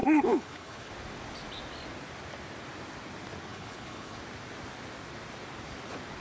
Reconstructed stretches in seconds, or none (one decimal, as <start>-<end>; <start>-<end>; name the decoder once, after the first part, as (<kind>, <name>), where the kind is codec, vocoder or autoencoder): 0.0-0.9 (codec, HILCodec); 3.5-4.2